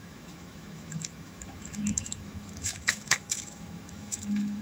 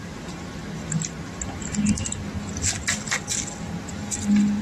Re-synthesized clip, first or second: first